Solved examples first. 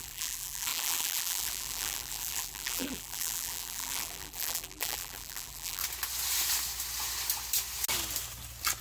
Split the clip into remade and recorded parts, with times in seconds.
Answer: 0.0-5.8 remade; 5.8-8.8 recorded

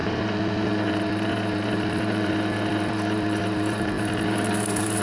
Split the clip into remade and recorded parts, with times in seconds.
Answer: 0.0-2.3 remade; 2.3-2.7 recorded; 2.7-5.0 remade

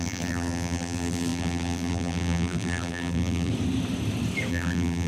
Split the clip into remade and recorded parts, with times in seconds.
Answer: 0.0-3.5 remade; 3.5-4.5 recorded; 4.5-5.1 remade

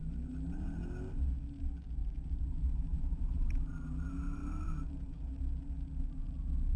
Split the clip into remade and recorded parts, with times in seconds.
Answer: 0.0-2.0 recorded; 2.0-3.6 remade; 3.6-4.4 recorded; 4.4-5.4 remade; 5.4-6.8 recorded

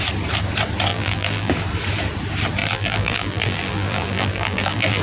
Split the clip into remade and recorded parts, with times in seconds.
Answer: 0.0-0.9 recorded; 0.9-1.5 remade; 1.5-2.6 recorded; 2.6-5.0 remade

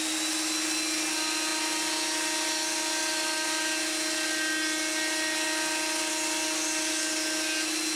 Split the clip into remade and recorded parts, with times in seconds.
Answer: 0.0-8.0 recorded

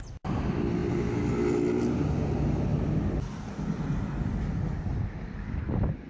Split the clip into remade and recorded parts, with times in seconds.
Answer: 0.0-2.7 recorded; 2.7-5.6 remade; 5.6-6.1 recorded

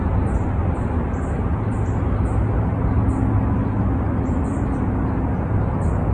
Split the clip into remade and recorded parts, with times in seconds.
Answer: 0.0-0.6 remade; 0.6-4.3 recorded; 4.3-6.1 remade